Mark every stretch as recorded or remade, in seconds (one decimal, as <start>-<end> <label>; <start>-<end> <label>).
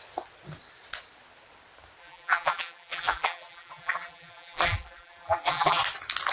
0.0-2.0 recorded; 2.0-5.8 remade; 5.8-6.3 recorded